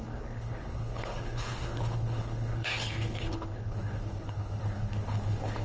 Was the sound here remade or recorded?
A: remade